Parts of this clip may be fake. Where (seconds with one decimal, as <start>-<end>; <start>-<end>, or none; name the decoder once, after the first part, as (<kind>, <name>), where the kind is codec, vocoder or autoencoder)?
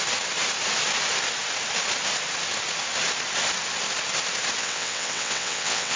4.6-6.0 (vocoder, WaveNeXt)